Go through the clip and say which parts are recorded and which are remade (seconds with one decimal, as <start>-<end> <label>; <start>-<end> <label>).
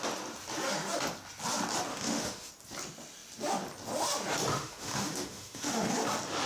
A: 0.0-1.9 recorded; 1.9-2.5 remade; 2.5-4.5 recorded; 4.5-5.9 remade; 5.9-6.5 recorded